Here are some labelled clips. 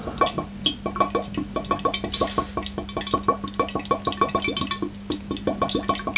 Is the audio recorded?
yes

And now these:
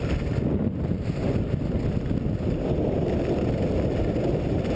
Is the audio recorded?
yes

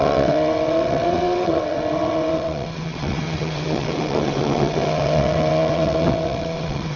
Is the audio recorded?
no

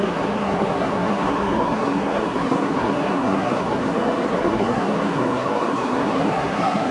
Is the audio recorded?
no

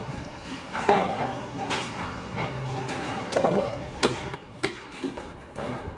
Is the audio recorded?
no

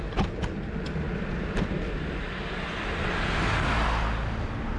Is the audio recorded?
yes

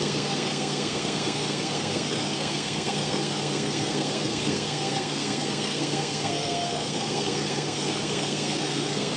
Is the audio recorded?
no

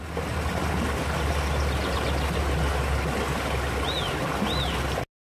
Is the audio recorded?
yes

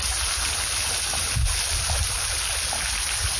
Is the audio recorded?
yes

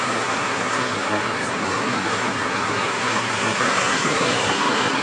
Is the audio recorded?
no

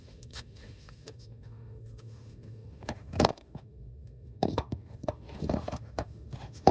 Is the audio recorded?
no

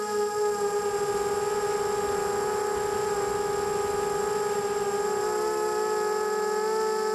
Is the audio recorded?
yes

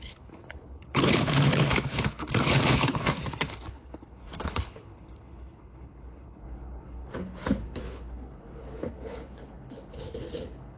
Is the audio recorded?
no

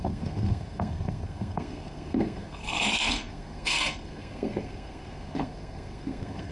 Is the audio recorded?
no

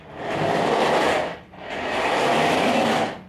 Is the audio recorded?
yes